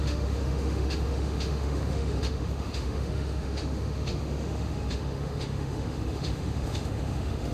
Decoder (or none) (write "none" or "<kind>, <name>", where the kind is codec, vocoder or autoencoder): autoencoder, DAC-VAE